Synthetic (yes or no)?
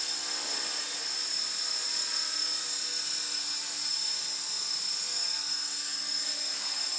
no